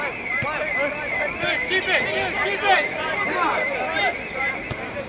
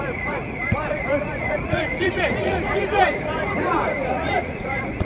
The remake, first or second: second